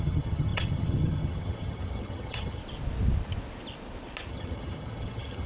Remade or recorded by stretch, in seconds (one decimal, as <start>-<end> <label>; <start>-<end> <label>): 0.0-2.6 remade; 2.6-4.3 recorded; 4.3-5.5 remade